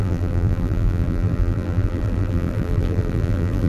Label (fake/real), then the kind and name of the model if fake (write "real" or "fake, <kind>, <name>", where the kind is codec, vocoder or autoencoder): fake, vocoder, BigVGAN v2